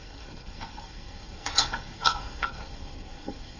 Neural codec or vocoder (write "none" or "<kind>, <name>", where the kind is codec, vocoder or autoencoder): codec, SNAC